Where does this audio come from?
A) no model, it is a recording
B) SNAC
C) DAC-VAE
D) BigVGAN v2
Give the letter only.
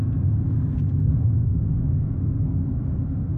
B